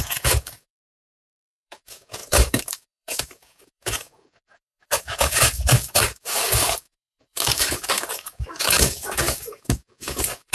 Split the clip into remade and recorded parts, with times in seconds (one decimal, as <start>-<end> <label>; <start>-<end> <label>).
0.0-10.5 remade